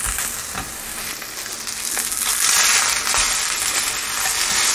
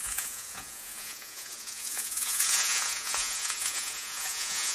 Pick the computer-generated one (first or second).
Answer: second